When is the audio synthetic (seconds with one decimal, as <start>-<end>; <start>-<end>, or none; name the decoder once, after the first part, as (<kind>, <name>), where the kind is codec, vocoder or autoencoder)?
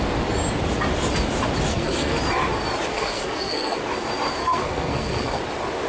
1.7-2.2 (codec, SNAC); 2.9-3.8; 4.4-5.4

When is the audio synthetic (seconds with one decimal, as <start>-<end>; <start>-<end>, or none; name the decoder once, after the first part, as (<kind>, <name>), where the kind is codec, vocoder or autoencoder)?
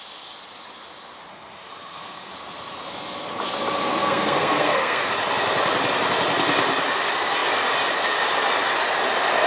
1.3-2.3 (codec, SNAC); 4.0-5.0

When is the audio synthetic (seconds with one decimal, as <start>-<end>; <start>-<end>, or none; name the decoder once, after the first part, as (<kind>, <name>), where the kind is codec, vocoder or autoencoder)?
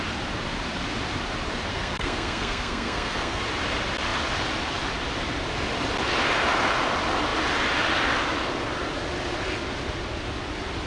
1.7-3.4 (codec, SNAC)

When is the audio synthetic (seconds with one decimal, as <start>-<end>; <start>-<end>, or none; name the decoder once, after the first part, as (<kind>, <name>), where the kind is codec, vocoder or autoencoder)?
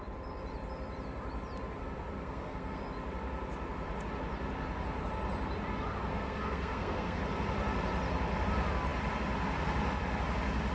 2.2-2.8 (codec, SNAC); 6.1-7.2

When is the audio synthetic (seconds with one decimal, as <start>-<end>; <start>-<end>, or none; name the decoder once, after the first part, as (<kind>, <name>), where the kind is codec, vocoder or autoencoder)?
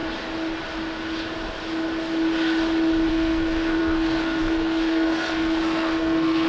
3.1-6.5 (codec, SNAC)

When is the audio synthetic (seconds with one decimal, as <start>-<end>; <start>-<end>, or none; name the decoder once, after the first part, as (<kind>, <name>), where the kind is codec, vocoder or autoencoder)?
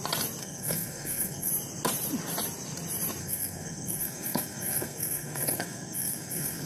0.4-1.5 (codec, SNAC); 3.2-6.7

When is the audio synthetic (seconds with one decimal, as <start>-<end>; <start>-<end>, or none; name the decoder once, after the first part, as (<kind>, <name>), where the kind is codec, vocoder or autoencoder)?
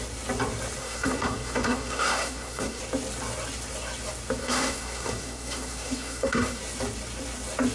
0.8-2.8 (codec, SNAC); 4.4-6.6